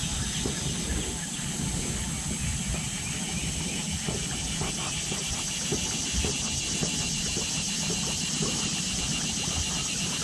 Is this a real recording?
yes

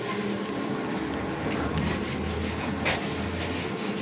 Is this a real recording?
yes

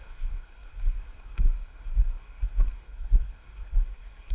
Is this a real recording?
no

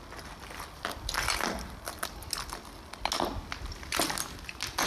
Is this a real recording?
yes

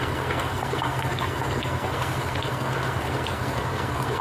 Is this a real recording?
no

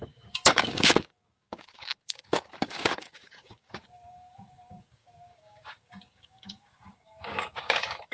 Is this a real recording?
no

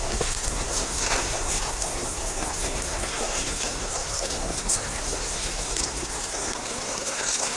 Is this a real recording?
no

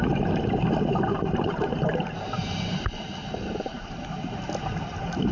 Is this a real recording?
no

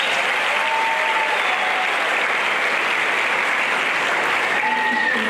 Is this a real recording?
yes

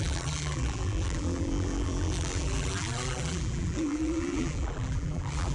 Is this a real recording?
no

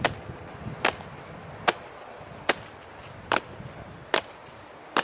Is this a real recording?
yes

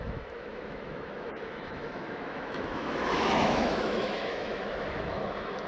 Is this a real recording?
no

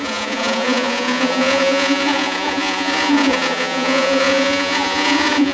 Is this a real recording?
no